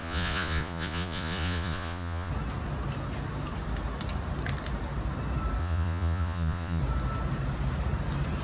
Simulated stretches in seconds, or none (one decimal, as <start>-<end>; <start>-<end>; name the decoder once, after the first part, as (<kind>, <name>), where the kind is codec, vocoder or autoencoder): 0.0-2.3 (vocoder, Vocos); 5.6-6.8